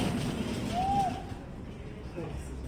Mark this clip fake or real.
real